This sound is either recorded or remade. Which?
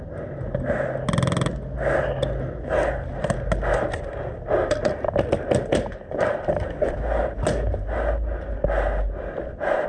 recorded